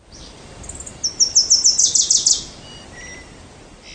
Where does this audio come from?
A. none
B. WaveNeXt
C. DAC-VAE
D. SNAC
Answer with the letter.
A